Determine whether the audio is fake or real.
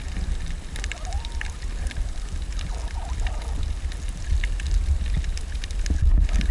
real